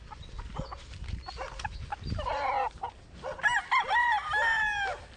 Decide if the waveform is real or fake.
real